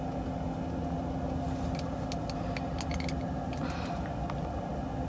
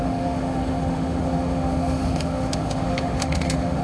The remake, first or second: second